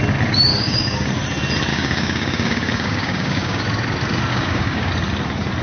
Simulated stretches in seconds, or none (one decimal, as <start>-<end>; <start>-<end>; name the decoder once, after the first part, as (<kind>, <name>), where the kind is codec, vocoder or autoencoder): 0.5-1.1 (codec, DAC); 1.7-3.6; 4.3-4.9